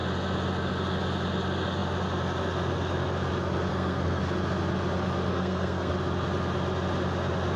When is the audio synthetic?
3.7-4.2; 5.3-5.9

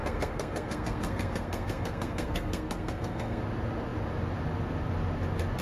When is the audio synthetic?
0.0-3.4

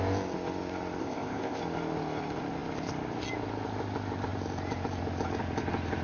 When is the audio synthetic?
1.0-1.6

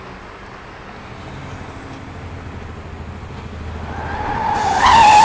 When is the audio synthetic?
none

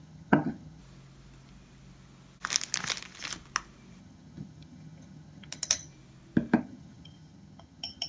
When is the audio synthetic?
0.0-0.8; 4.0-5.9; 6.6-8.1